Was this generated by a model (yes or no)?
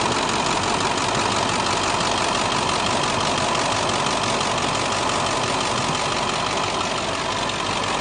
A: no